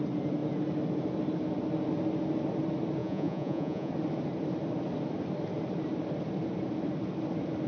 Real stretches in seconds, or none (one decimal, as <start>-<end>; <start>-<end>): 0.0-3.0; 3.9-7.7